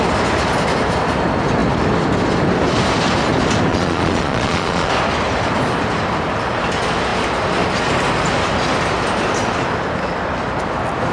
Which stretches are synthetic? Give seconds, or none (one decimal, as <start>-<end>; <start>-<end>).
3.7-4.9